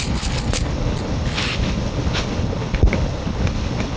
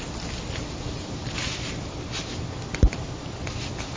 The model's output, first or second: first